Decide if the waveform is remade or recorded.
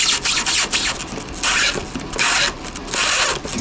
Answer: recorded